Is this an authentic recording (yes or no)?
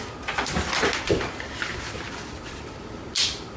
yes